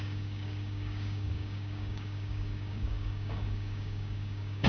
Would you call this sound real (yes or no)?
no